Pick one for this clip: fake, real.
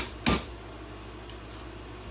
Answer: real